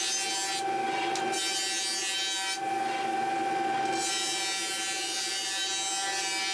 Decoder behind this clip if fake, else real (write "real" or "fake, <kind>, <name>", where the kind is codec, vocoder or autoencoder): real